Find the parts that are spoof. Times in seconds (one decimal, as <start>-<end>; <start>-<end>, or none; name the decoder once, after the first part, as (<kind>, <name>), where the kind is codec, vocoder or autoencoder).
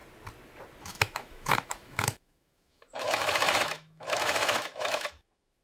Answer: 0.8-5.6 (autoencoder, DAC-VAE)